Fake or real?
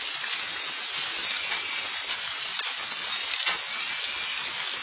real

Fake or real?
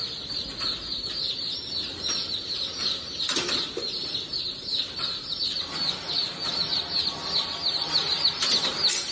real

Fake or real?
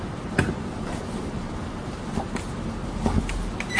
real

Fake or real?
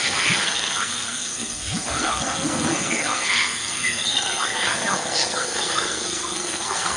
fake